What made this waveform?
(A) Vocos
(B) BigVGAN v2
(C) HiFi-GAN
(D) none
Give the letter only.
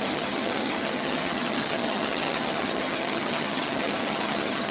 C